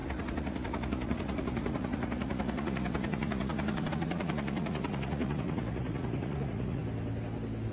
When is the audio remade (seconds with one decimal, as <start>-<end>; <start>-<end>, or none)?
0.0-6.8